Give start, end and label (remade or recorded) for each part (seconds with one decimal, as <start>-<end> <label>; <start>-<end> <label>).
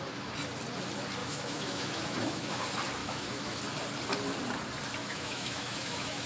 0.0-1.2 recorded; 1.2-2.6 remade; 2.6-3.0 recorded; 3.0-3.6 remade; 3.6-5.0 recorded; 5.0-6.3 remade